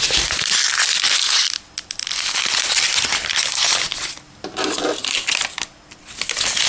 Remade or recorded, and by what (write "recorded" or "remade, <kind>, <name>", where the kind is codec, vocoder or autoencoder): recorded